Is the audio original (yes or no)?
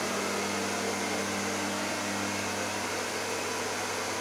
yes